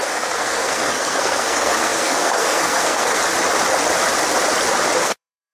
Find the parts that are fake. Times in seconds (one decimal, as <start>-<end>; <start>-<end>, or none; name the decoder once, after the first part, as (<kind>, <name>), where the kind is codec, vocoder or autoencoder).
0.0-3.2 (codec, SNAC); 5.0-5.5